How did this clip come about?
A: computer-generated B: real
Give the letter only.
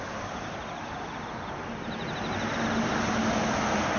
B